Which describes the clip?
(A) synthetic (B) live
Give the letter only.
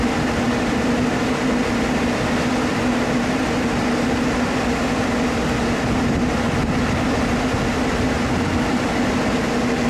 B